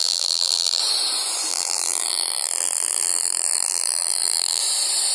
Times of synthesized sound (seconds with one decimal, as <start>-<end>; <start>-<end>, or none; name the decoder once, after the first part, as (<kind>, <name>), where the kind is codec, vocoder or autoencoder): 0.0-0.8 (vocoder, BigVGAN v2); 1.5-4.6